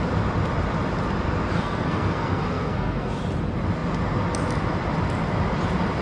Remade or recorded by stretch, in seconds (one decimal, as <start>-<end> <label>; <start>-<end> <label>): 0.0-1.5 recorded; 1.5-3.2 remade; 3.2-6.0 recorded